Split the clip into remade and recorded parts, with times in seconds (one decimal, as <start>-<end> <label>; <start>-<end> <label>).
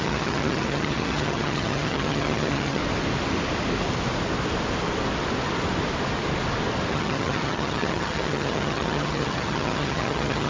0.0-2.8 remade; 2.8-6.9 recorded; 6.9-10.5 remade